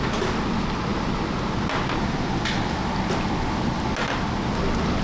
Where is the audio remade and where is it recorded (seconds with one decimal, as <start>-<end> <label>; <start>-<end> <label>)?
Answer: 0.0-5.0 recorded